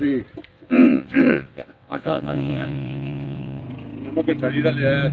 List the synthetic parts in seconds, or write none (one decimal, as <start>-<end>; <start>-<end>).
0.5-3.6